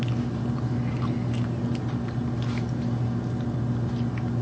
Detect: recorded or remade recorded